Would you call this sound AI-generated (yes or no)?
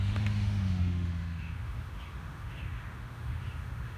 yes